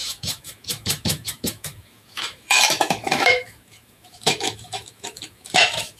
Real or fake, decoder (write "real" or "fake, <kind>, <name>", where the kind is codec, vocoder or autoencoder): fake, autoencoder, DAC-VAE